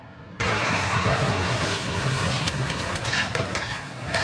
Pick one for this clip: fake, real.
fake